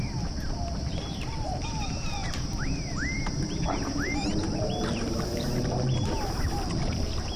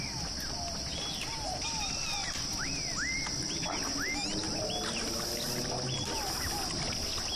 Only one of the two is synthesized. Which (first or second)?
first